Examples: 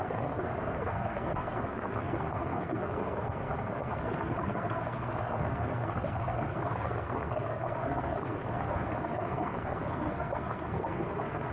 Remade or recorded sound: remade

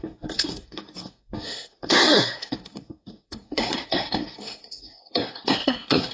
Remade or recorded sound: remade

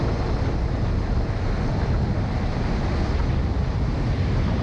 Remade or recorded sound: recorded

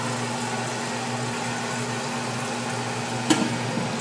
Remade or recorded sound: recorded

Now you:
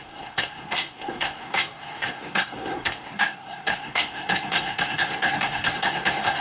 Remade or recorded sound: remade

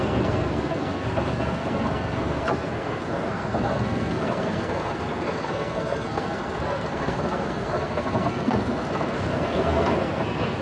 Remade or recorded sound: remade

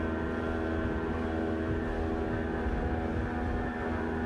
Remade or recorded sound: recorded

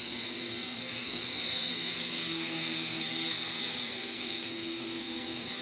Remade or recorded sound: remade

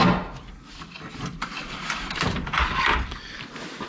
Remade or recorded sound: recorded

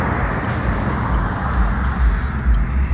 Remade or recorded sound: recorded